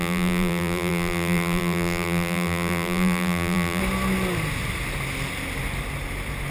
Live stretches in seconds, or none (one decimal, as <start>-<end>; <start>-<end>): 3.8-6.5